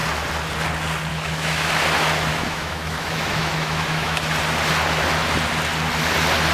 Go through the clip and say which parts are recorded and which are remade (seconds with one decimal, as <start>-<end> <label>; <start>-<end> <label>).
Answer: 0.0-1.1 recorded; 1.1-1.7 remade; 1.7-2.3 recorded; 2.3-4.2 remade; 4.2-6.5 recorded

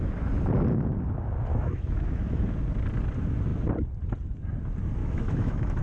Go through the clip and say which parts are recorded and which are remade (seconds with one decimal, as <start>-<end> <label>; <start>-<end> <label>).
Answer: 0.0-1.5 recorded; 1.5-2.4 remade; 2.4-5.0 recorded; 5.0-5.8 remade

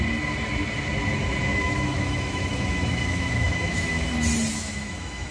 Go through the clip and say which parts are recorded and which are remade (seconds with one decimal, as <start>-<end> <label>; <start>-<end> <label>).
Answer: 0.0-1.4 recorded; 1.4-4.1 remade; 4.1-4.5 recorded; 4.5-5.3 remade

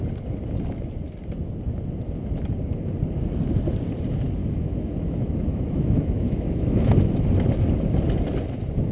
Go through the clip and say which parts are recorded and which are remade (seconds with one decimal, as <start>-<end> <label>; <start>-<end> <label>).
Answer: 0.0-4.4 recorded; 4.4-7.1 remade; 7.1-8.9 recorded